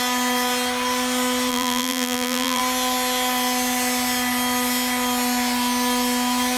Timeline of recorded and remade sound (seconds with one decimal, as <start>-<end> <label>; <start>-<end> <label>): 0.0-1.5 recorded; 1.5-2.6 remade; 2.6-6.6 recorded